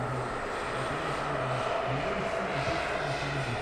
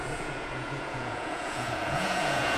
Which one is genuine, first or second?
first